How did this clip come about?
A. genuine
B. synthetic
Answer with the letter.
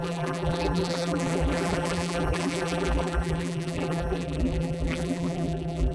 B